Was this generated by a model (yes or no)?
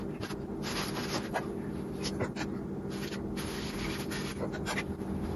no